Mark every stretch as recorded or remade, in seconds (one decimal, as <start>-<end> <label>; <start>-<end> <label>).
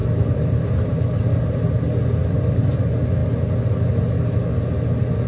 0.0-0.9 remade; 0.9-2.2 recorded; 2.2-2.8 remade; 2.8-5.3 recorded